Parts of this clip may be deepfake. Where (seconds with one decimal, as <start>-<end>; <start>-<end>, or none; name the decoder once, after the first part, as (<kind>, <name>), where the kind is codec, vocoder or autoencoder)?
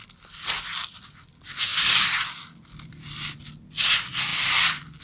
none